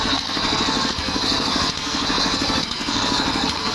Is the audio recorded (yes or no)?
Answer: no